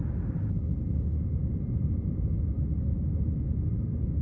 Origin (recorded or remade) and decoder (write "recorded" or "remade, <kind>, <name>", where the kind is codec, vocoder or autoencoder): recorded